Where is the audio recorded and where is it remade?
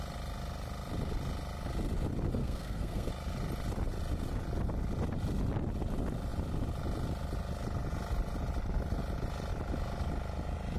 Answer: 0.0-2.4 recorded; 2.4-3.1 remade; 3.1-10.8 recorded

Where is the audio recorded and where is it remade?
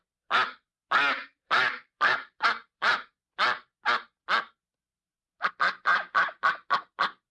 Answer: 0.0-1.2 recorded; 1.2-2.9 remade; 2.9-4.9 recorded; 4.9-5.5 remade; 5.5-7.3 recorded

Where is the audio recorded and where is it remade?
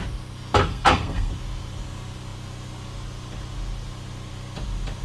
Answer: 0.0-0.7 recorded; 0.7-1.3 remade; 1.3-5.0 recorded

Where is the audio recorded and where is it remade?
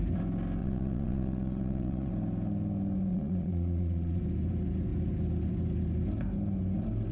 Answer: 0.0-0.6 recorded; 0.6-2.1 remade; 2.1-3.1 recorded; 3.1-4.2 remade; 4.2-7.1 recorded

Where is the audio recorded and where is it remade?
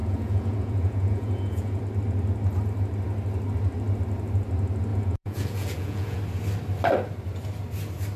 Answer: 0.0-1.8 remade; 1.8-4.9 recorded; 4.9-6.2 remade; 6.2-8.2 recorded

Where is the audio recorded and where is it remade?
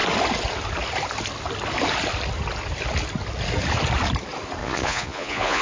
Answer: 0.0-4.6 recorded; 4.6-5.6 remade